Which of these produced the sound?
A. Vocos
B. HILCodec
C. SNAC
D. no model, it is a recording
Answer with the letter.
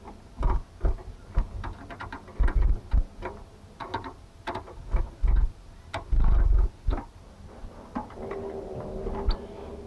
D